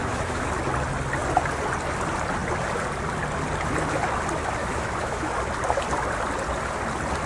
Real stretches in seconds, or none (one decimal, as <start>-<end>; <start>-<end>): 0.5-4.6; 5.3-7.3